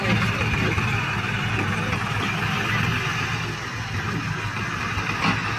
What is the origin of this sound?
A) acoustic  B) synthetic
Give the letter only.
A